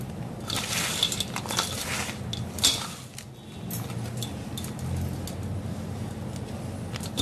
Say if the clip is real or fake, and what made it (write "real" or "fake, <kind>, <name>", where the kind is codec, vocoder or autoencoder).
real